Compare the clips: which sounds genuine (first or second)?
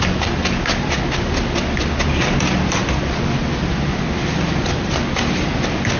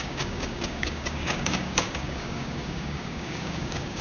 first